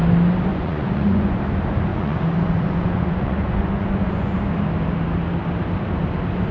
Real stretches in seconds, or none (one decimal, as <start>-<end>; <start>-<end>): 0.0-0.5; 1.4-1.9; 4.4-6.5